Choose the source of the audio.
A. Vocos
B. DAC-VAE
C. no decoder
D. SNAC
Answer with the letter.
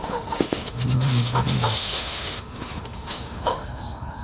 B